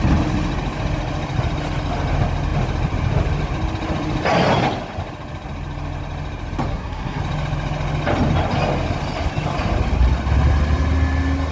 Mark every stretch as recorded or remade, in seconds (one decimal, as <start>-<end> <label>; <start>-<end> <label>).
0.0-6.7 recorded; 6.7-7.2 remade; 7.2-11.5 recorded